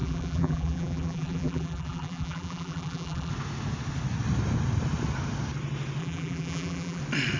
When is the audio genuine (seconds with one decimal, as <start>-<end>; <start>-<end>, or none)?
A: 3.3-6.0; 7.0-7.4